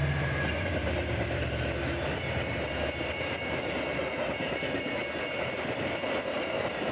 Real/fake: real